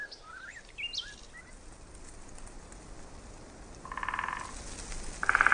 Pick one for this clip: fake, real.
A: real